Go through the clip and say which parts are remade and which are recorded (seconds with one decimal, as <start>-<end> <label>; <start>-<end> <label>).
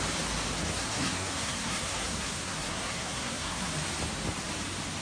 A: 0.0-0.7 recorded; 0.7-3.7 remade; 3.7-5.0 recorded